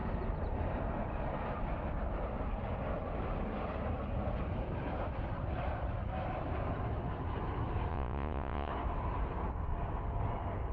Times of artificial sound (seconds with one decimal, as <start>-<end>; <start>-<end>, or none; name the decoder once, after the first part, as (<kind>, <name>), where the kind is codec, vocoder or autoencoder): 7.9-8.7 (vocoder, Vocos)